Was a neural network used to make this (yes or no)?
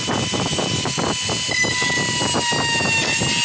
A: no